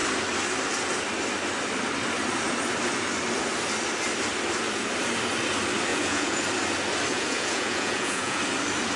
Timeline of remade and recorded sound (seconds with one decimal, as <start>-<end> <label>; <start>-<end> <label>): 0.0-5.9 recorded; 5.9-6.4 remade; 6.4-7.1 recorded; 7.1-8.4 remade; 8.4-9.0 recorded